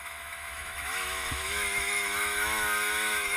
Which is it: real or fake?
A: fake